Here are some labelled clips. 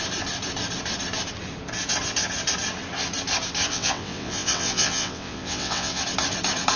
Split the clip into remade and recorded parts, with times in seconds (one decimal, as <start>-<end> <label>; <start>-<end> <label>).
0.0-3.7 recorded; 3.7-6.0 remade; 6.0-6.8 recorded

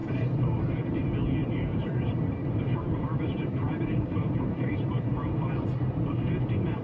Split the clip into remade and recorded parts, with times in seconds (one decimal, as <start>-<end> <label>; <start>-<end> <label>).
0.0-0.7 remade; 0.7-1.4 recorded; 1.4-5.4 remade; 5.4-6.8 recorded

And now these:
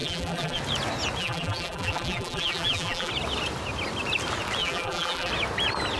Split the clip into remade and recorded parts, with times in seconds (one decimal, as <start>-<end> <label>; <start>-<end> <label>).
0.0-0.6 remade; 0.6-1.2 recorded; 1.2-3.1 remade; 3.1-4.6 recorded; 4.6-5.3 remade; 5.3-6.0 recorded

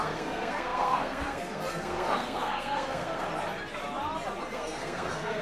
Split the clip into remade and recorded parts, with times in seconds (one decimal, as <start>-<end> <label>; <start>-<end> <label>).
0.0-3.3 remade; 3.3-4.4 recorded; 4.4-5.4 remade

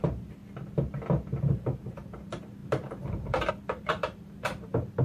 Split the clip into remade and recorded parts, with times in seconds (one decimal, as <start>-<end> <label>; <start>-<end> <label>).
0.0-0.4 remade; 0.4-1.5 recorded; 1.5-5.0 remade

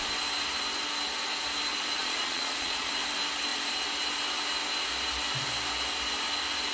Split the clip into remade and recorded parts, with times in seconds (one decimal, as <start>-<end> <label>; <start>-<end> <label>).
0.0-2.0 recorded; 2.0-2.9 remade; 2.9-6.7 recorded